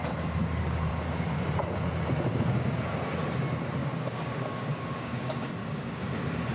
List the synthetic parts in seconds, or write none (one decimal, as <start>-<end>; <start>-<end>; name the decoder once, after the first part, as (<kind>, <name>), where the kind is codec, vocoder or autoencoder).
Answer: 0.4-0.9 (codec, DAC); 3.8-6.0